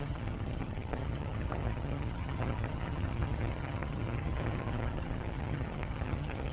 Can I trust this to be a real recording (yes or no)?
no